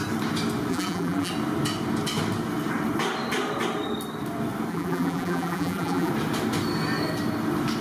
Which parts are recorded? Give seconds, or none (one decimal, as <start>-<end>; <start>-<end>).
0.0-0.7; 1.3-4.7; 6.1-7.8